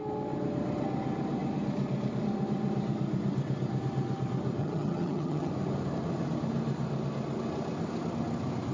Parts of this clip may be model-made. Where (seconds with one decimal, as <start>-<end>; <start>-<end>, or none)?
4.6-5.5